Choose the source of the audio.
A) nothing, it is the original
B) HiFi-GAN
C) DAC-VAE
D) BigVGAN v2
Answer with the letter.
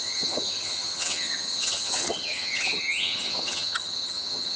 B